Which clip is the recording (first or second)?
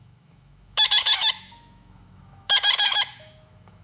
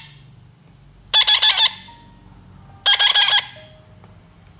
second